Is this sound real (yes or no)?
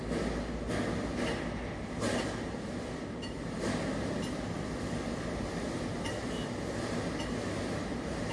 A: yes